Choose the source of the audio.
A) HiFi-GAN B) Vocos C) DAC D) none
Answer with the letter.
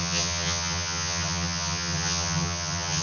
A